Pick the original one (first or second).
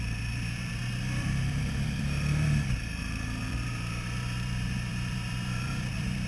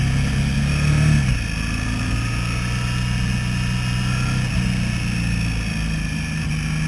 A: second